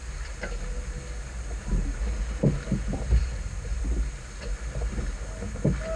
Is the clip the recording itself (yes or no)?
yes